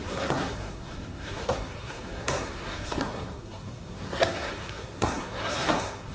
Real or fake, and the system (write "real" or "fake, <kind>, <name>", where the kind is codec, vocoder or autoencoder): fake, codec, SNAC